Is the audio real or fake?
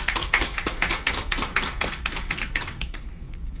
fake